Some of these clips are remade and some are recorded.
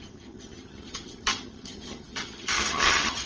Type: remade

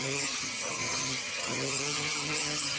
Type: remade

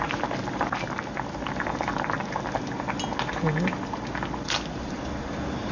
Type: recorded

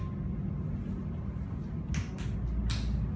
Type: recorded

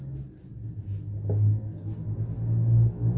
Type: recorded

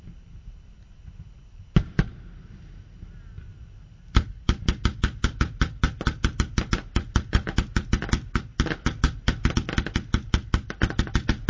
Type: recorded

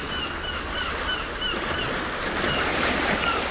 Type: recorded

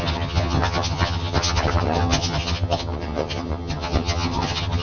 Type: remade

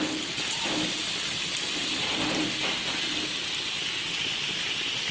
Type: recorded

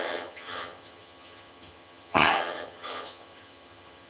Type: remade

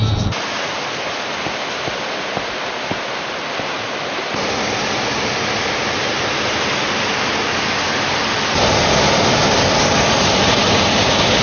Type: recorded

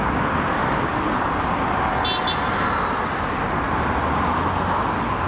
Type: recorded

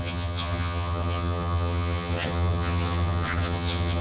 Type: remade